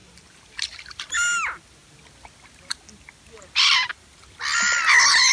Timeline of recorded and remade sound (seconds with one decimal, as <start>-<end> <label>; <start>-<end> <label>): 0.0-1.1 remade; 1.1-5.3 recorded